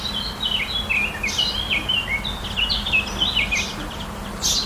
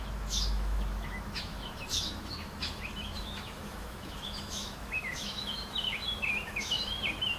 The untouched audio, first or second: first